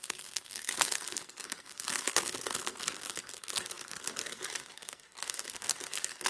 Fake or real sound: fake